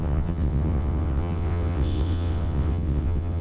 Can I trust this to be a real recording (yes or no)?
no